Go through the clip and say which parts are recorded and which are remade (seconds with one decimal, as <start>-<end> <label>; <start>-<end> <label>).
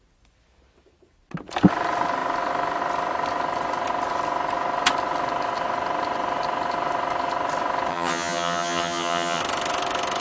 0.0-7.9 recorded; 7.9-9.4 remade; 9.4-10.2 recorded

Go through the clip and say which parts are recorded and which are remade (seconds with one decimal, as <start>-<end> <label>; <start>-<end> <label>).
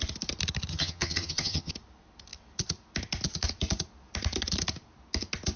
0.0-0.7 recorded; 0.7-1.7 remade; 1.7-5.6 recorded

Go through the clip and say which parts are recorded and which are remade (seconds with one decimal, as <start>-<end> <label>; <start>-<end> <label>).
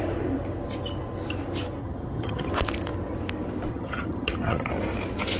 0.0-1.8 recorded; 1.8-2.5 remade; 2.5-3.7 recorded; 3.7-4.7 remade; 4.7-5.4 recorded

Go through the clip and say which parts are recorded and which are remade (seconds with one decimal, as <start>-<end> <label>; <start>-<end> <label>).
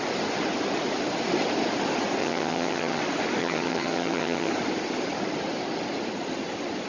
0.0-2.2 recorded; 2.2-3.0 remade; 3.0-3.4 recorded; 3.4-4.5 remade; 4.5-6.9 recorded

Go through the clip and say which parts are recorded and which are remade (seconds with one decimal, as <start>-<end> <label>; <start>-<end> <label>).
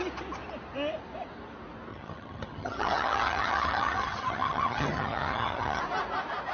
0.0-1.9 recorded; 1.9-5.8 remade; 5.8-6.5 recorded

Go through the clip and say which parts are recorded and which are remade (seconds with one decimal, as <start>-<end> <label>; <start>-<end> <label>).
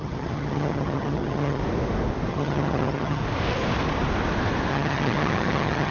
0.0-1.6 remade; 1.6-2.3 recorded; 2.3-3.2 remade; 3.2-4.7 recorded; 4.7-5.9 remade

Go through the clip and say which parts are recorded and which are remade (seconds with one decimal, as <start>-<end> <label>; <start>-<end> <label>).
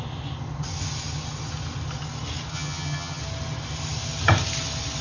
0.0-2.5 recorded; 2.5-3.2 remade; 3.2-5.0 recorded